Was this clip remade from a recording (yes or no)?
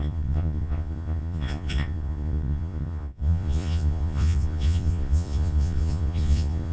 yes